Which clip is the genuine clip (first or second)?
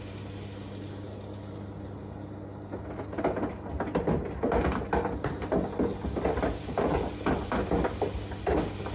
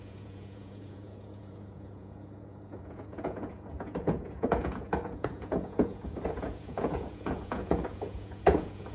first